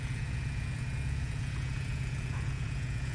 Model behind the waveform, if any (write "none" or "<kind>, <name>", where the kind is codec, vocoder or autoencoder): vocoder, Vocos